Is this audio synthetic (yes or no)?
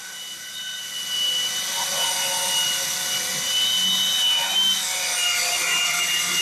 no